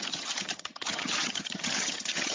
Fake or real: fake